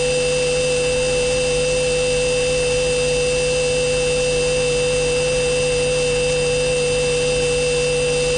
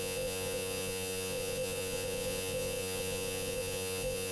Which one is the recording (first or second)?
first